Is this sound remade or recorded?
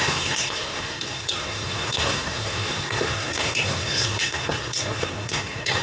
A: remade